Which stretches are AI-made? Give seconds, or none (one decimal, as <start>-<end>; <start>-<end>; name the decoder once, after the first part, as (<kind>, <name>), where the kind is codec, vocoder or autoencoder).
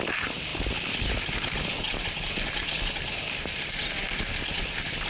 none